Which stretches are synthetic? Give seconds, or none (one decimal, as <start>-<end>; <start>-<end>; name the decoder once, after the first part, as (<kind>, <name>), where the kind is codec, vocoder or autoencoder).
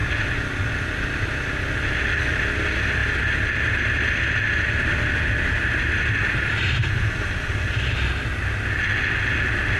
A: none